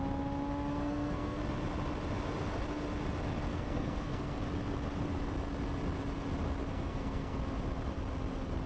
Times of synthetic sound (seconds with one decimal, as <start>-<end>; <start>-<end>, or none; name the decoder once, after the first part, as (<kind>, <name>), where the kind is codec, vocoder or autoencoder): 0.7-1.4 (codec, SNAC); 3.5-4.4; 6.7-7.4